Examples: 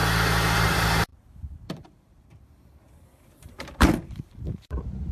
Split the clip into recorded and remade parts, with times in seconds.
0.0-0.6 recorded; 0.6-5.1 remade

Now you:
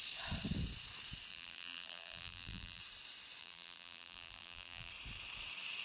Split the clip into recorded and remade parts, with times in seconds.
0.0-1.3 recorded; 1.3-2.8 remade; 2.8-3.4 recorded; 3.4-4.9 remade; 4.9-5.8 recorded

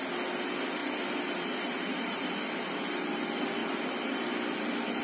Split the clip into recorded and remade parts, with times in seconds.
0.0-3.6 recorded; 3.6-4.3 remade; 4.3-5.0 recorded

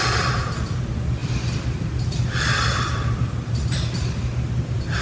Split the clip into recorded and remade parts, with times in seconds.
0.0-1.2 recorded; 1.2-4.2 remade; 4.2-5.0 recorded

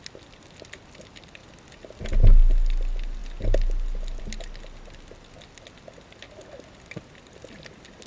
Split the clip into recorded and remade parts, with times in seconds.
0.0-8.1 recorded

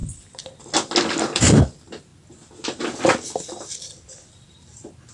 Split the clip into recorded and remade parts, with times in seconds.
0.0-1.4 recorded; 1.4-2.1 remade; 2.1-4.5 recorded; 4.5-5.1 remade

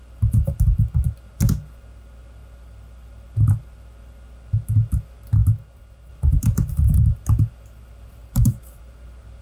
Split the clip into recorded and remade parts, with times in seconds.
0.0-8.2 recorded; 8.2-8.9 remade; 8.9-9.4 recorded